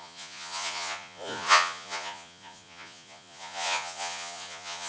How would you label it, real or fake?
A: fake